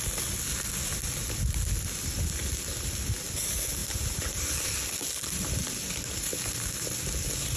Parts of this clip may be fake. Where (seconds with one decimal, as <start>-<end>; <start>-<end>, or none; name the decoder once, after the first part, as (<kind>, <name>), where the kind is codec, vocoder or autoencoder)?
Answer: 3.8-4.7 (vocoder, BigVGAN v2)